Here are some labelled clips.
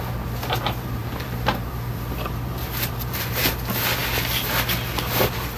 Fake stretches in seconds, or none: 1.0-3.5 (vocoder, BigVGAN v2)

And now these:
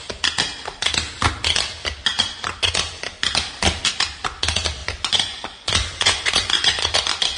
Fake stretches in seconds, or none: 2.0-2.7 (vocoder, Vocos); 4.8-7.0

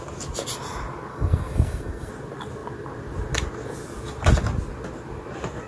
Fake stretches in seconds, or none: 1.1-2.1 (codec, SNAC)

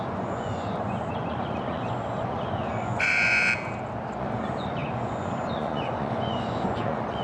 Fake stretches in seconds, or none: 0.0-3.5 (vocoder, Vocos); 4.2-7.2

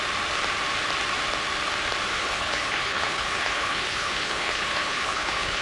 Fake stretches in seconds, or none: 2.1-5.6 (codec, HILCodec)

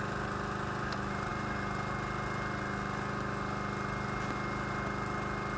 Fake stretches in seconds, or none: none

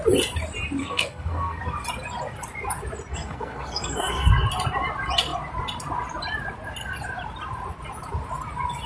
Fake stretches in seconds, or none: 0.8-1.6 (codec, SNAC); 3.1-4.3